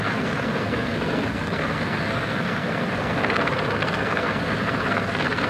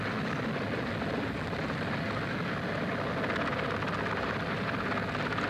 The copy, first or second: first